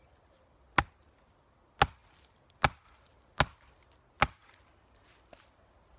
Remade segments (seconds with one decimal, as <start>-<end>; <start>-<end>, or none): none